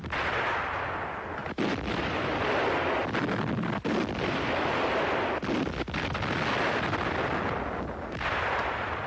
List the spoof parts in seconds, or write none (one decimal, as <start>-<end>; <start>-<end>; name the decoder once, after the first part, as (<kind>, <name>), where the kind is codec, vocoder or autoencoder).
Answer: 1.4-2.7 (vocoder, BigVGAN v2)